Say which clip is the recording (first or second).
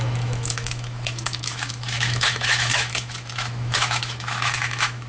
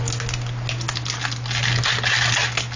second